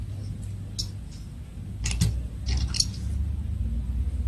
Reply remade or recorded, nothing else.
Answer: recorded